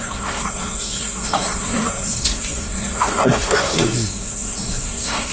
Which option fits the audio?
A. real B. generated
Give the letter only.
B